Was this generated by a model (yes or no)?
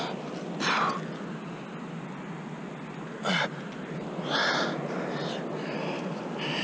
no